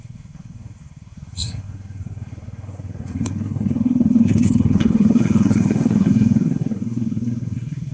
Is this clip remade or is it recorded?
remade